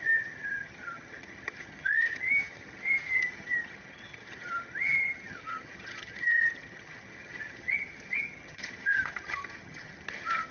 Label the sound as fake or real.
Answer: fake